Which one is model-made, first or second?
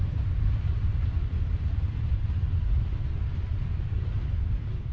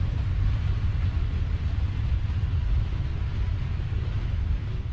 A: first